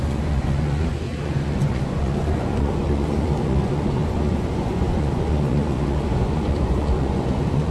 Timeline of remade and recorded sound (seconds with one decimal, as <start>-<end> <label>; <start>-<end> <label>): 0.0-7.7 remade